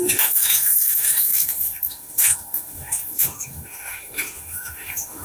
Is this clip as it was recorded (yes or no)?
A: no